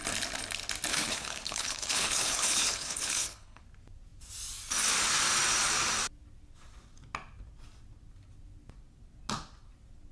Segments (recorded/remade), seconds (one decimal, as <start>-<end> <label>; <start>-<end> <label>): 0.0-0.9 recorded; 0.9-3.6 remade; 3.6-10.1 recorded